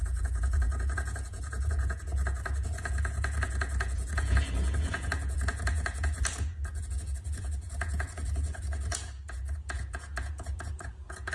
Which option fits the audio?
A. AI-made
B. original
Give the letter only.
A